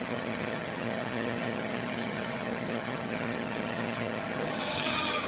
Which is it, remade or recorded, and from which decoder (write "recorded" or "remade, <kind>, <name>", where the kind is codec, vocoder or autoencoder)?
remade, vocoder, HiFi-GAN